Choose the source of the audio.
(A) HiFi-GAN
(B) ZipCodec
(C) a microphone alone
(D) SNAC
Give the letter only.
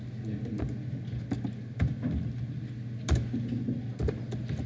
C